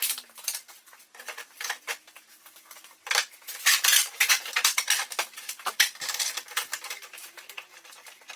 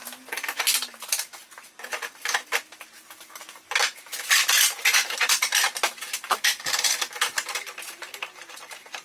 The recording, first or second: second